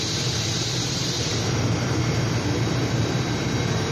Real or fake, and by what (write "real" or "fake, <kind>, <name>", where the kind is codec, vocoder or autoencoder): fake, vocoder, BigVGAN v2